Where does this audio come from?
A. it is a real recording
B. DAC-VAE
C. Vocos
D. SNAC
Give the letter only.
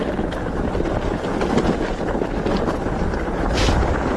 A